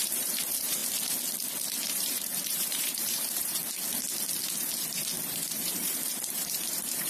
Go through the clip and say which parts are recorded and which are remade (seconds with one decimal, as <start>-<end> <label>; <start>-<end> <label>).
0.0-0.8 remade; 0.8-1.9 recorded; 1.9-3.6 remade; 3.6-5.3 recorded; 5.3-7.1 remade

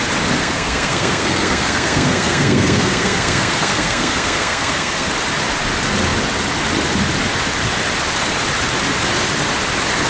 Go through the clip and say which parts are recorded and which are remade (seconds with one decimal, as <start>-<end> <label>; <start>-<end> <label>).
0.0-0.4 recorded; 0.4-5.1 remade; 5.1-10.1 recorded

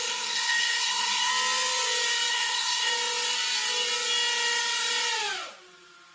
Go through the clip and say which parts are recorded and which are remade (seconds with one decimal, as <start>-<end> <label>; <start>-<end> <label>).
0.0-1.3 remade; 1.3-2.3 recorded; 2.3-2.9 remade; 2.9-6.1 recorded